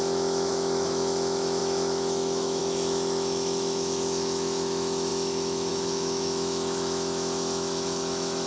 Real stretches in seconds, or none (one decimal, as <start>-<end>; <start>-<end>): none